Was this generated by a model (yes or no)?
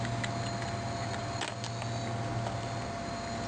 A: no